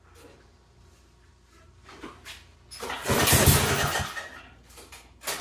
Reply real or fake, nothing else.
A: real